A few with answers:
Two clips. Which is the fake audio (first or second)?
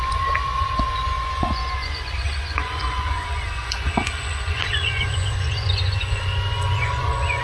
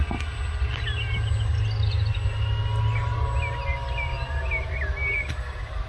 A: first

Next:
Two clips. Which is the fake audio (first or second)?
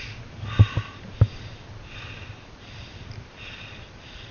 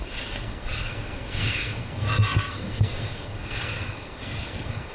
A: second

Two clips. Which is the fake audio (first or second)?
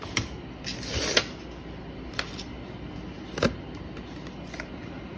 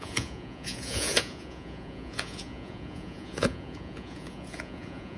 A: second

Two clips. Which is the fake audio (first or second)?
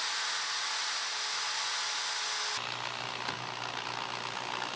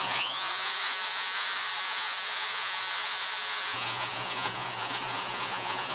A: second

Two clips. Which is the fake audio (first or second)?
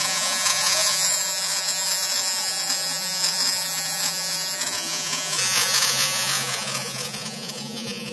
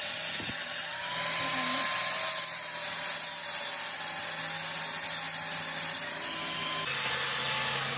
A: first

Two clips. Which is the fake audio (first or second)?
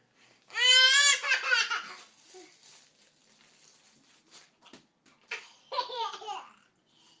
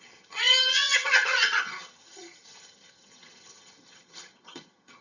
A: second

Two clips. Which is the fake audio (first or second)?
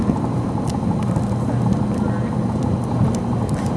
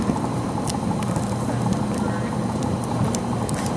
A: second